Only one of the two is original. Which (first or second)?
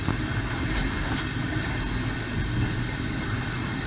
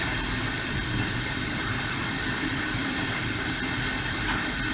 first